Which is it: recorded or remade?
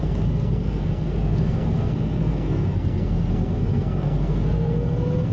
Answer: remade